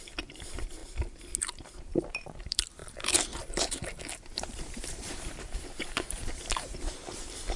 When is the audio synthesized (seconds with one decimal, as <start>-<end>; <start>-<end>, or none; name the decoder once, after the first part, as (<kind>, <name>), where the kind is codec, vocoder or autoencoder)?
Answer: 0.0-0.8 (vocoder, BigVGAN v2); 1.4-7.6